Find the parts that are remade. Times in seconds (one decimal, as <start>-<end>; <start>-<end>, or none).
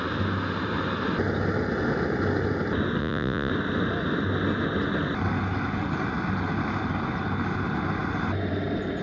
3.0-3.5